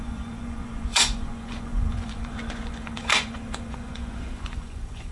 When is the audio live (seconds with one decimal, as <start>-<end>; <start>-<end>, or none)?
none